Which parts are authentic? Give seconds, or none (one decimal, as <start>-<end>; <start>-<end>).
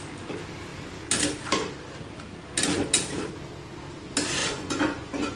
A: 0.0-4.4